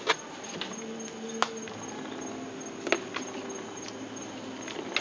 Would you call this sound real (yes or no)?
yes